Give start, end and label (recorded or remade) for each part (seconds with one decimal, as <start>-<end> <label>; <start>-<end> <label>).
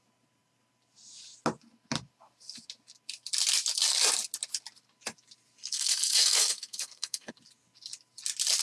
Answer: 0.0-5.6 recorded; 5.6-7.3 remade; 7.3-8.6 recorded